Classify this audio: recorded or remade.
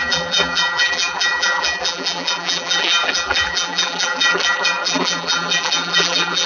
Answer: remade